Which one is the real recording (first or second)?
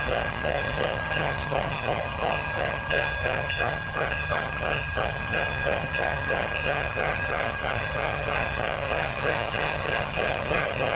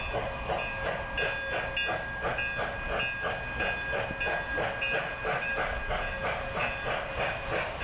second